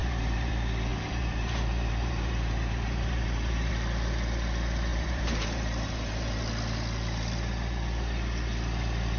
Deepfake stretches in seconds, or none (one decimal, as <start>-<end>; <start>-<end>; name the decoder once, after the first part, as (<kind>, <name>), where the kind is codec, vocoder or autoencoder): 0.0-0.5 (vocoder, BigVGAN v2); 0.9-3.7; 4.9-6.4